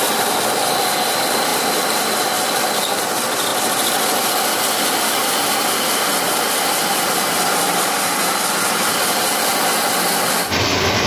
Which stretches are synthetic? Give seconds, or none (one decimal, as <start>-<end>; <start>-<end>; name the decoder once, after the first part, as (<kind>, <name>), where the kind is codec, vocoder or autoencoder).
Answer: none